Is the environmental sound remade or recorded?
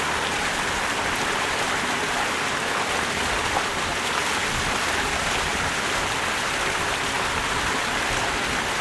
recorded